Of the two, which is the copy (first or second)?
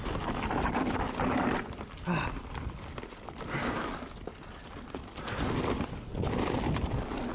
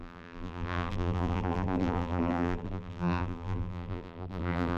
second